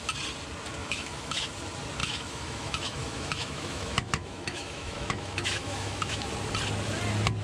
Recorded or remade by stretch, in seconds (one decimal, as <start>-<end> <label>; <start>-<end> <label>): 0.0-0.8 recorded; 0.8-1.5 remade; 1.5-2.0 recorded; 2.0-6.3 remade; 6.3-7.4 recorded